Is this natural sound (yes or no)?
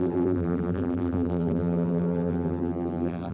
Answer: no